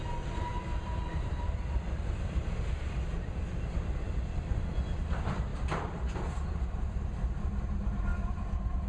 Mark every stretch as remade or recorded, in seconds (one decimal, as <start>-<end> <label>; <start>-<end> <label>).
0.0-0.5 recorded; 0.5-3.5 remade; 3.5-8.1 recorded; 8.1-8.9 remade